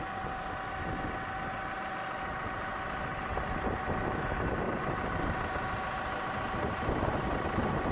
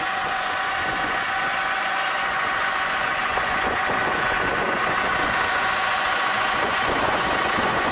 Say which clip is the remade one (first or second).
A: second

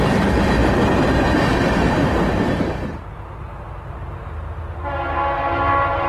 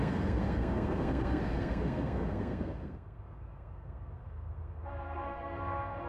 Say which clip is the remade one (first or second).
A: second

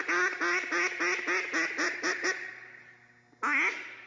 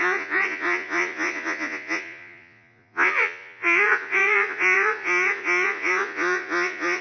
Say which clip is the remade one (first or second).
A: second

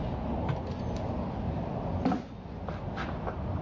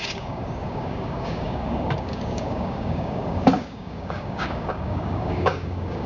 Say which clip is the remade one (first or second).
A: second